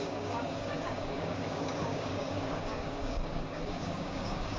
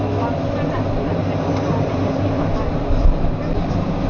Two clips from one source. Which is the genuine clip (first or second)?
second